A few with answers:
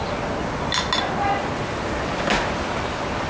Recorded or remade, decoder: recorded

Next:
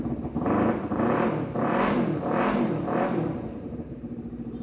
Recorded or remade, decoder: remade, vocoder, BigVGAN v2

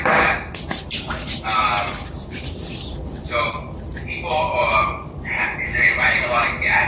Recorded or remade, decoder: remade, vocoder, BigVGAN v2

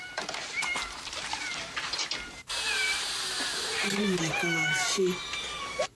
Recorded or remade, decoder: remade, vocoder, BigVGAN v2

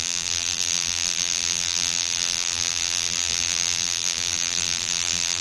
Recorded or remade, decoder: remade, vocoder, BigVGAN v2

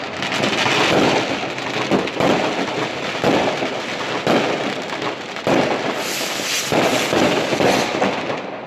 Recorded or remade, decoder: recorded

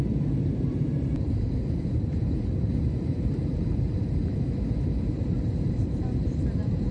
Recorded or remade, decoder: remade, vocoder, BigVGAN v2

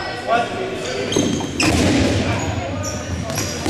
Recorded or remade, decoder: recorded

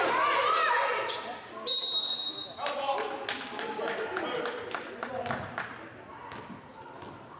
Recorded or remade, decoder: recorded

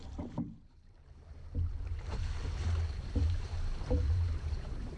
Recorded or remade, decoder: remade, vocoder, BigVGAN v2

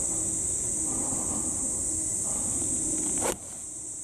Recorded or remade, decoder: recorded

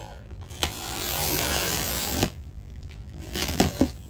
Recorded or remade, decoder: remade, vocoder, BigVGAN v2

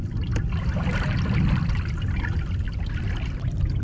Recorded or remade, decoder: recorded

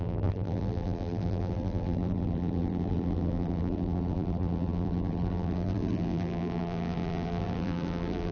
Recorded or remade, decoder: remade, vocoder, BigVGAN v2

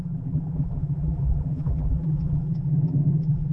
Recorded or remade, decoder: remade, vocoder, BigVGAN v2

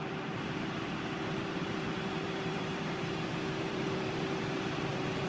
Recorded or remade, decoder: remade, vocoder, BigVGAN v2